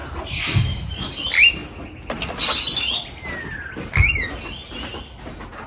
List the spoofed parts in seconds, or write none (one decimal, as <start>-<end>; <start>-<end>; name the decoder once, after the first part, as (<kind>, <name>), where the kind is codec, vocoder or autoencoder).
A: none